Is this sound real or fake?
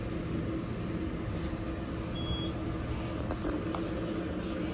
real